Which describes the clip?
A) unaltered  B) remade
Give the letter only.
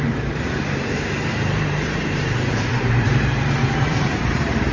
B